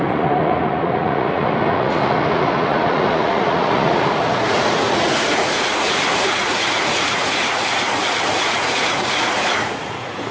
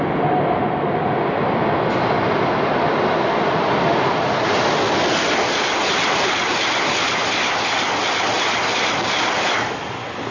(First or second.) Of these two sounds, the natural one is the second